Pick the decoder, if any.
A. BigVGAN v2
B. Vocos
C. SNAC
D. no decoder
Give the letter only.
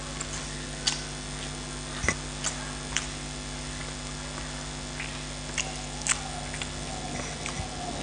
D